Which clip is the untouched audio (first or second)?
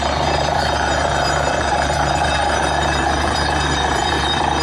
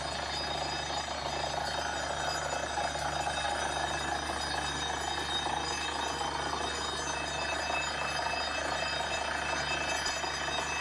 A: second